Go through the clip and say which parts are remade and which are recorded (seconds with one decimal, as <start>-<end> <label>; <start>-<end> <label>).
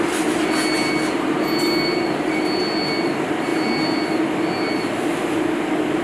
0.0-6.0 recorded